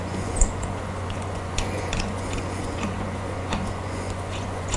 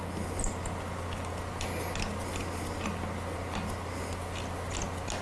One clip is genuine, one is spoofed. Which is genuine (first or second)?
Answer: second